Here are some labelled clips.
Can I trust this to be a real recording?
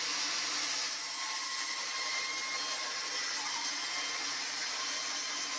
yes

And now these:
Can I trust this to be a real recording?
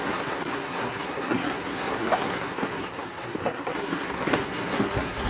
no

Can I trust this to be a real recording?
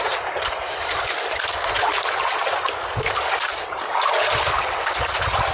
yes